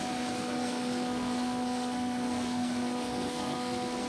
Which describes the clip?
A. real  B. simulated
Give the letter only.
B